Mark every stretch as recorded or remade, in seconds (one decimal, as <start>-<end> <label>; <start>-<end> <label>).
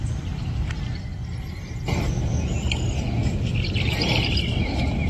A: 0.0-1.1 recorded; 1.1-4.2 remade; 4.2-5.1 recorded